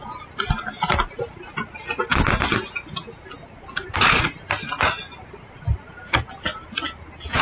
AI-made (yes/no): no